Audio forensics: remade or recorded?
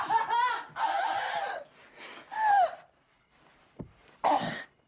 recorded